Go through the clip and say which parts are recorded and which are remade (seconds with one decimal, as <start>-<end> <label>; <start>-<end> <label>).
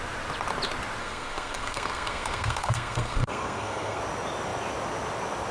0.0-1.0 recorded; 1.0-4.0 remade; 4.0-5.5 recorded